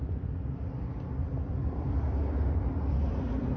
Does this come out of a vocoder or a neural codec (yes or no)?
no